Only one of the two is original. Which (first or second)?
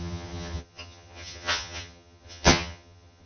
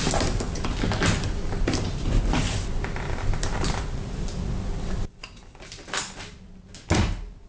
second